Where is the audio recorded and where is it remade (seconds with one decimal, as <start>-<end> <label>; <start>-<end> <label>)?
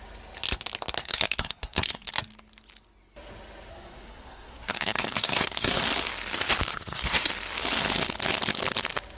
0.0-1.0 recorded; 1.0-2.1 remade; 2.1-3.7 recorded; 3.7-5.8 remade; 5.8-6.7 recorded; 6.7-7.3 remade; 7.3-9.2 recorded